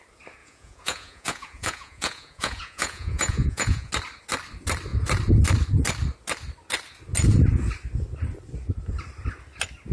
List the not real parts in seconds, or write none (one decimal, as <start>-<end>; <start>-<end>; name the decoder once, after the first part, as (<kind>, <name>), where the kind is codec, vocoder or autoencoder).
0.4-3.9 (vocoder, Vocos)